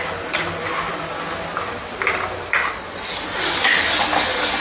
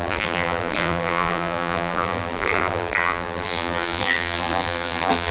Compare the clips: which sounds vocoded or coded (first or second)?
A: second